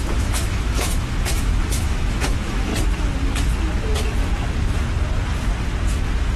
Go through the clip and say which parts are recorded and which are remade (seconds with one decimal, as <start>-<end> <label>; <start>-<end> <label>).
0.0-2.7 remade; 2.7-6.4 recorded